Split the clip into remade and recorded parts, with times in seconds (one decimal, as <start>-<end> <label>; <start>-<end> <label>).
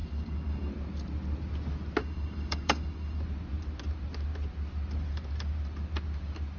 0.0-0.7 remade; 0.7-2.0 recorded; 2.0-3.2 remade; 3.2-6.6 recorded